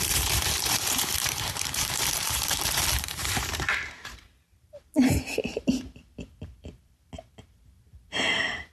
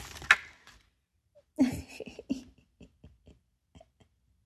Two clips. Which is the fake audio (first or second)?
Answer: first